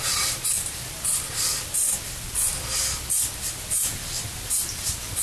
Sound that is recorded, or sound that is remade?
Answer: remade